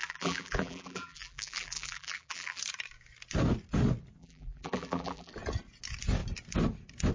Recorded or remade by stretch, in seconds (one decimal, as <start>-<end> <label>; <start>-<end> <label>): 0.0-2.6 remade; 2.6-4.2 recorded; 4.2-5.3 remade; 5.3-7.1 recorded

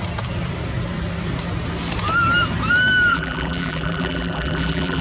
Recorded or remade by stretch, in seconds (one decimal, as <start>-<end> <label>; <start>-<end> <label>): 0.0-3.1 recorded; 3.1-5.0 remade

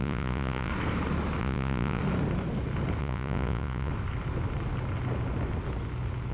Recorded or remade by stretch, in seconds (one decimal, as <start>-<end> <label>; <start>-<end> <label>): 0.0-0.7 remade; 0.7-1.4 recorded; 1.4-2.0 remade; 2.0-3.0 recorded; 3.0-3.9 remade; 3.9-6.3 recorded